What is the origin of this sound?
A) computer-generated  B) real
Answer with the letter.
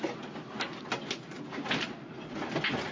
B